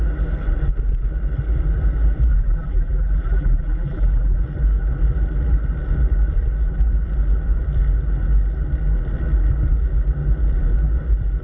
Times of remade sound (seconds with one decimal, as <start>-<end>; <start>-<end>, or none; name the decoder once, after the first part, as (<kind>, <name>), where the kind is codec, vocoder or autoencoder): 2.3-4.4 (vocoder, BigVGAN v2)